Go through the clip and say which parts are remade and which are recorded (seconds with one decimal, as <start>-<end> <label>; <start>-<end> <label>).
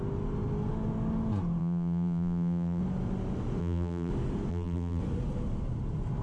0.0-1.6 recorded; 1.6-2.8 remade; 2.8-3.6 recorded; 3.6-4.1 remade; 4.1-4.5 recorded; 4.5-5.0 remade; 5.0-6.2 recorded